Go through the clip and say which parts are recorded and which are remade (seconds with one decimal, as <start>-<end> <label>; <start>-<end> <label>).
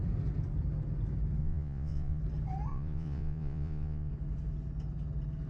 0.0-1.4 recorded; 1.4-2.2 remade; 2.2-2.7 recorded; 2.7-4.1 remade; 4.1-5.5 recorded